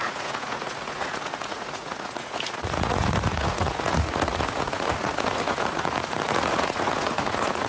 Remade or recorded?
remade